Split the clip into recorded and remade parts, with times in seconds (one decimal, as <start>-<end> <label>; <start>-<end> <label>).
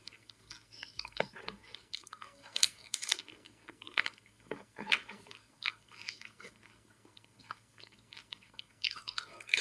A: 0.0-9.6 remade